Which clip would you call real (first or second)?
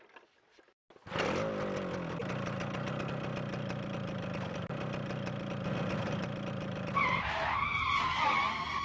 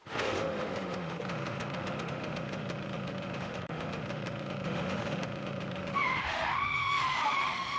first